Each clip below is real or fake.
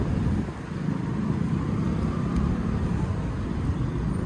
real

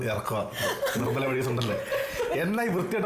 real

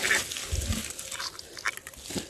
real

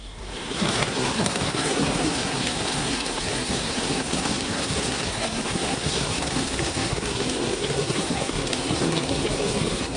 fake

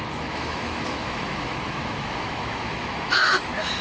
fake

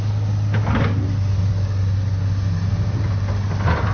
real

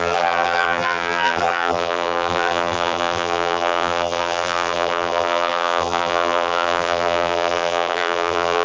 fake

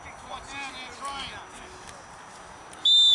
real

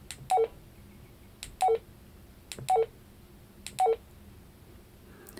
real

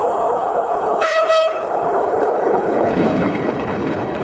fake